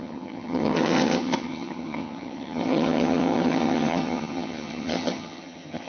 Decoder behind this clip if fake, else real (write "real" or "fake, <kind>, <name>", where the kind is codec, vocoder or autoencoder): fake, vocoder, HiFi-GAN